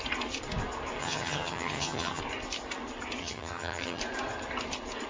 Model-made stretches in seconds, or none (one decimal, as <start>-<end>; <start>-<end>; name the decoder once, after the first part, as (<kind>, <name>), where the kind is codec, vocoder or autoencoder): 1.0-2.2 (vocoder, HiFi-GAN); 3.2-4.0